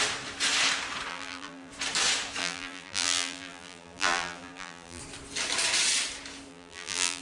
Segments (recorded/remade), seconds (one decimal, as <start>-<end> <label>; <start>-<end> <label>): 0.0-1.1 recorded; 1.1-1.7 remade; 1.7-2.4 recorded; 2.4-5.0 remade; 5.0-6.5 recorded; 6.5-7.2 remade